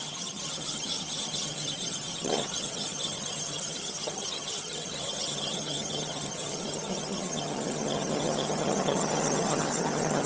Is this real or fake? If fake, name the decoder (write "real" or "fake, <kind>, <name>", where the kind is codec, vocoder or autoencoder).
fake, vocoder, HiFi-GAN